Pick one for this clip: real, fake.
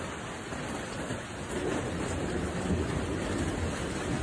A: real